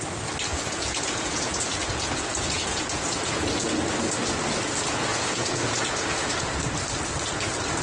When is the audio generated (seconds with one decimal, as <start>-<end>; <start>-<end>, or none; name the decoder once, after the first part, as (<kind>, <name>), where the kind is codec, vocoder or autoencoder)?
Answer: 0.5-3.8 (vocoder, Vocos); 5.1-6.6